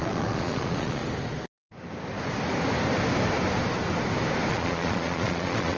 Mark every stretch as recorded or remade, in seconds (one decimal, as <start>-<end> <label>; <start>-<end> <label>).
0.0-1.0 remade; 1.0-4.5 recorded; 4.5-5.8 remade